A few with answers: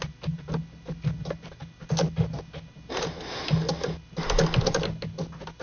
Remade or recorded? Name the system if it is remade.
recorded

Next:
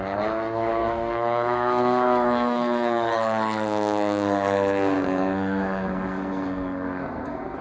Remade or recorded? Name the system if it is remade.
remade, codec, SNAC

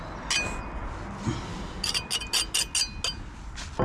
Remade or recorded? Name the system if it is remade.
recorded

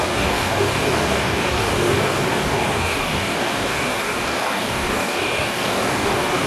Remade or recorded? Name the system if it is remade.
remade, codec, DAC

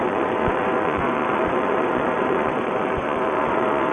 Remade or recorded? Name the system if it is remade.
remade, vocoder, Vocos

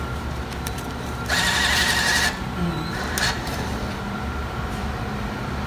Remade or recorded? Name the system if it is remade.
remade, vocoder, BigVGAN v2